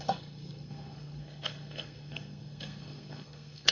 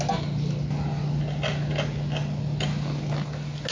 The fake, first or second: first